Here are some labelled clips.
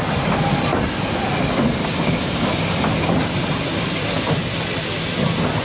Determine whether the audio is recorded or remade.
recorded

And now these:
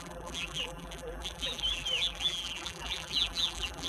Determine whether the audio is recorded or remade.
remade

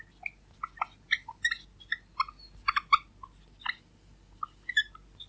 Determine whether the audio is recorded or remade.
recorded